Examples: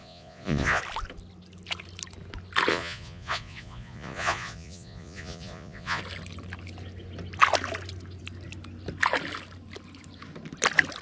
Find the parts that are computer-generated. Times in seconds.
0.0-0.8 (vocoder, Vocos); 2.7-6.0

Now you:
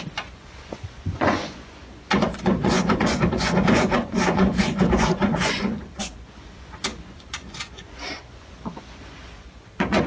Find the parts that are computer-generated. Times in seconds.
0.0-10.1 (vocoder, Vocos)

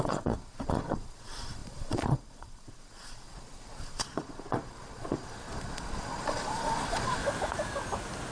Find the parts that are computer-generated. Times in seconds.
0.0-7.2 (vocoder, Vocos)

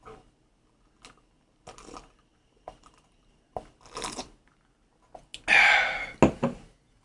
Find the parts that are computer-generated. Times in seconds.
none